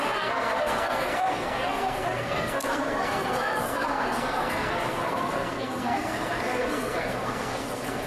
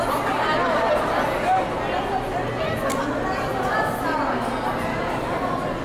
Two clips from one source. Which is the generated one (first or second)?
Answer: first